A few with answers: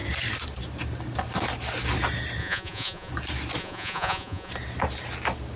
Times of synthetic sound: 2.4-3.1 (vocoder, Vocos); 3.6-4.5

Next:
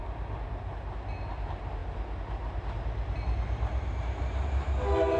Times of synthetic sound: 1.8-3.9 (vocoder, BigVGAN v2)

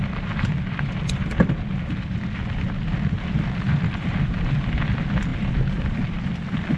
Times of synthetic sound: 0.0-2.4 (vocoder, BigVGAN v2); 3.3-5.3; 5.8-6.8

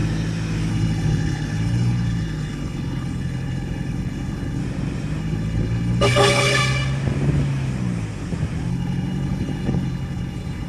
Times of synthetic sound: 0.7-4.6 (codec, HILCodec); 5.2-6.6; 8.7-10.7

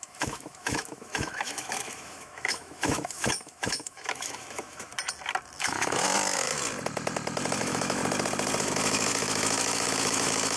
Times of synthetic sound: 0.0-4.9 (autoencoder, DAC-VAE); 5.6-6.5; 7.6-8.0; 8.6-10.6

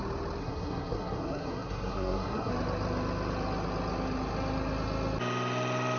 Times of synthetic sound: 0.4-2.5 (codec, SNAC)

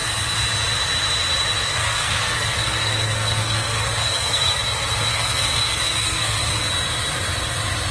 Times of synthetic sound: 1.6-4.6 (codec, SNAC); 5.1-6.7

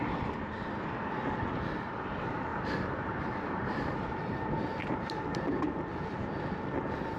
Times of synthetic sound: 2.5-6.0 (vocoder, BigVGAN v2)